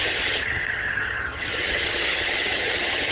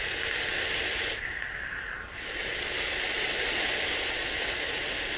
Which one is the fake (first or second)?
first